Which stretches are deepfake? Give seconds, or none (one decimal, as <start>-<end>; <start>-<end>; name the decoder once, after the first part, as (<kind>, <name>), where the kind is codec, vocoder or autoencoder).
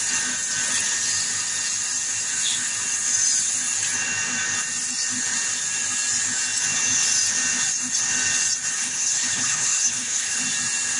8.8-10.4 (codec, HILCodec)